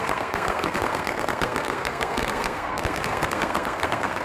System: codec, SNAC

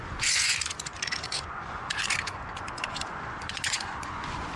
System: vocoder, Vocos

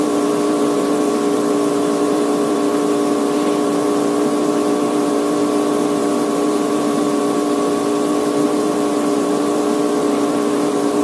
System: vocoder, BigVGAN v2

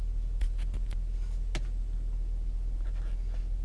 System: none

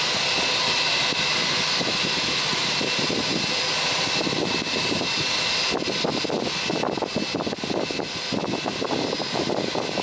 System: none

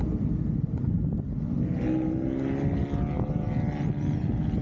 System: none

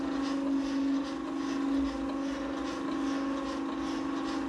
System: none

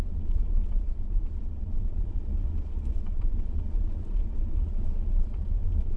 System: vocoder, Vocos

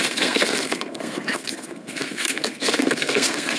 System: codec, SNAC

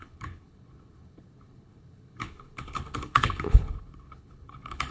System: codec, HILCodec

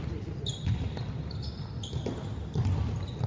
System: none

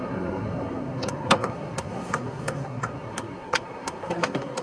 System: codec, SNAC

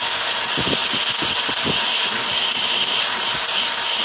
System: none